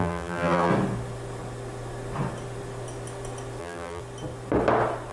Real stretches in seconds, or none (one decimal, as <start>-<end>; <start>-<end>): 0.7-3.6; 4.0-5.1